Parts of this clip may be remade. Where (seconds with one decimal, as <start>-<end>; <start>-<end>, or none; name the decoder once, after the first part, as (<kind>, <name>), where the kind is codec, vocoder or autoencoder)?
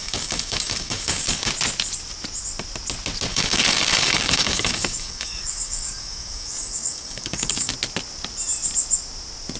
0.0-1.5 (codec, DAC); 3.3-7.7